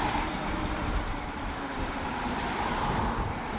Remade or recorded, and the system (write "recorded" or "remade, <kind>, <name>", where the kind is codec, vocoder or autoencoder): remade, vocoder, BigVGAN v2